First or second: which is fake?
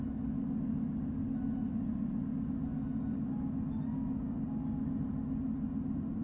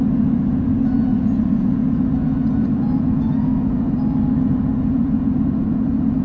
second